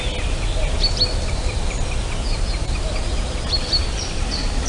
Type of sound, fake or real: real